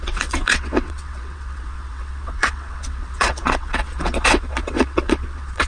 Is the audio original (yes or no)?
no